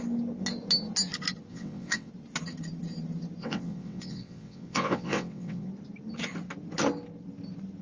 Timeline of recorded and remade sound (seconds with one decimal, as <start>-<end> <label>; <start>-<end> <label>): 0.0-1.5 recorded; 1.5-2.1 remade; 2.1-3.4 recorded; 3.4-5.7 remade; 5.7-7.8 recorded